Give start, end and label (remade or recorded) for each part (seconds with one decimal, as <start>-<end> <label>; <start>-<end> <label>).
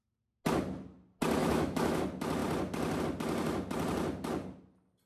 0.0-1.4 recorded; 1.4-2.0 remade; 2.0-5.1 recorded